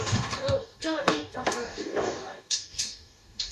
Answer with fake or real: fake